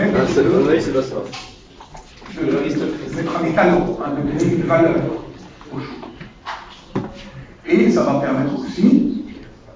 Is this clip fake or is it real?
real